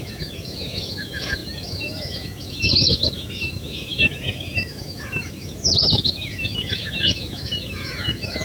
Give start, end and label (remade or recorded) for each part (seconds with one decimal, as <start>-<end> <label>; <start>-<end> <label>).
0.0-8.4 remade